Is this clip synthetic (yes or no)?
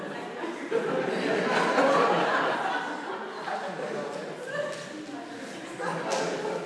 no